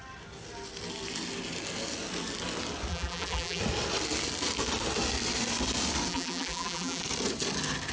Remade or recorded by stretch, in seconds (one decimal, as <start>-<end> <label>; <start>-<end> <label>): 0.0-2.9 recorded; 2.9-3.6 remade; 3.6-6.1 recorded; 6.1-7.0 remade; 7.0-7.9 recorded